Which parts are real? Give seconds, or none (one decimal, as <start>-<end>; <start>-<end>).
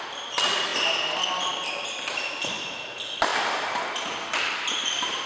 0.0-5.3